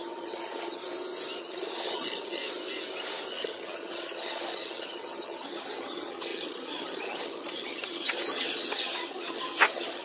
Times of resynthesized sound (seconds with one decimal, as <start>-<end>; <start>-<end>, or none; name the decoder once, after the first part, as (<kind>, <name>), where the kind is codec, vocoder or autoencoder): 0.0-0.8 (vocoder, HiFi-GAN); 1.4-2.4; 3.3-10.0